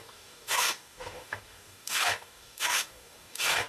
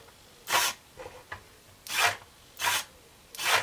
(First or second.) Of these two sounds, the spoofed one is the first